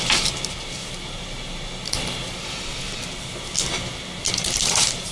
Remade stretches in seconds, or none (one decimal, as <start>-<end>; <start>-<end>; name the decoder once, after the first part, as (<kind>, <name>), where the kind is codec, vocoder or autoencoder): 0.0-1.2 (vocoder, BigVGAN v2); 4.3-5.1